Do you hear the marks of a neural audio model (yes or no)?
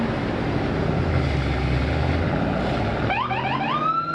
no